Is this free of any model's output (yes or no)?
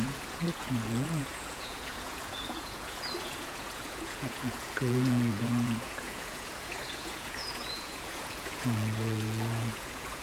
no